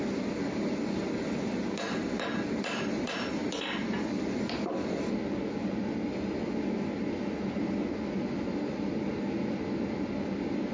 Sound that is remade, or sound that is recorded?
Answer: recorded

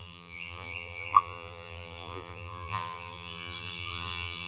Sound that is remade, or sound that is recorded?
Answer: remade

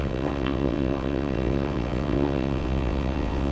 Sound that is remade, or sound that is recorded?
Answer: remade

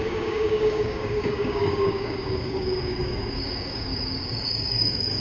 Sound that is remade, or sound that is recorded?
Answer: remade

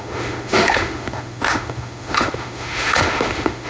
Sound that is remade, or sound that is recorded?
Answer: remade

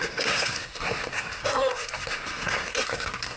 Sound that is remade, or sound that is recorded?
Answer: remade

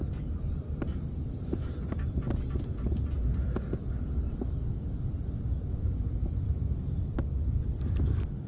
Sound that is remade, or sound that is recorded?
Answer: recorded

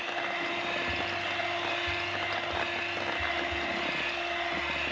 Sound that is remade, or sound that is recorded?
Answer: recorded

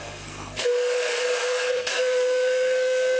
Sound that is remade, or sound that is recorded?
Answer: remade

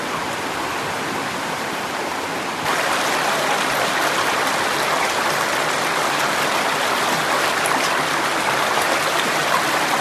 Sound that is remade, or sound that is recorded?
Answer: recorded